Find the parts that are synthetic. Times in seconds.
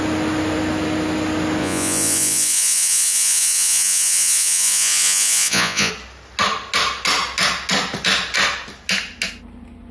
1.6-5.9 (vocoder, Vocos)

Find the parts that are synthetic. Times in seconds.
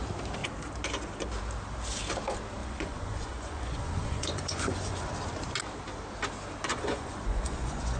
2.6-5.1 (vocoder, Vocos); 6.7-8.0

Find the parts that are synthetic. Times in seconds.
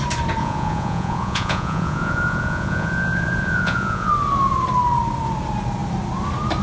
0.4-4.1 (vocoder, Vocos)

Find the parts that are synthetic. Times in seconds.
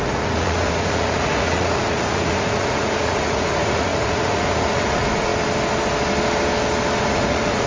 0.0-5.3 (vocoder, Vocos); 7.0-7.7